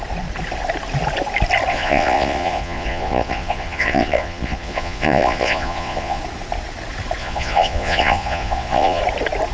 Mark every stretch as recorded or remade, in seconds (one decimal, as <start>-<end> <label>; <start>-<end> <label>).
0.0-1.7 recorded; 1.7-6.2 remade; 6.2-7.2 recorded; 7.2-9.0 remade; 9.0-9.5 recorded